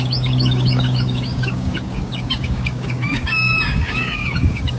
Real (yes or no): no